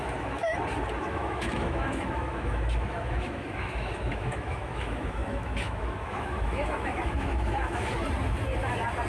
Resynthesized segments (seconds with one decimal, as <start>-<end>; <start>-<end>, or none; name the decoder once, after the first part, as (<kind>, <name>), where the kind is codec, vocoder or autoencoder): 0.0-0.4 (autoencoder, DAC-VAE); 1.0-7.9